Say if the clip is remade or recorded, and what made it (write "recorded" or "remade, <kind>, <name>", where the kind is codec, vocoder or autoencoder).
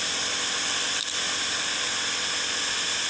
remade, vocoder, BigVGAN v2